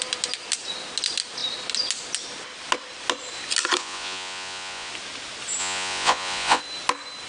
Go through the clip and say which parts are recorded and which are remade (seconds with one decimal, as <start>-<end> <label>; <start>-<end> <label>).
0.0-3.8 recorded; 3.8-4.9 remade; 4.9-5.6 recorded; 5.6-6.6 remade; 6.6-7.3 recorded